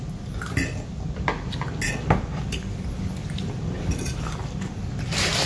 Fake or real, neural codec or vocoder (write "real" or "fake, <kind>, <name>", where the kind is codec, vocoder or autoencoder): real